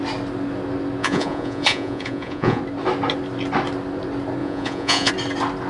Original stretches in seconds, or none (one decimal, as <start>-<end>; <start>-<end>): 0.0-1.0; 2.6-4.4; 5.1-5.7